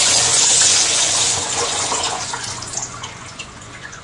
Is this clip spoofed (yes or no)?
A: yes